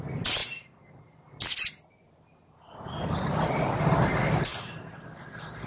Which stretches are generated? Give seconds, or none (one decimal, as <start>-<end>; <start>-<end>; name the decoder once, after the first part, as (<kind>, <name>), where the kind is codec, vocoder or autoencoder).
none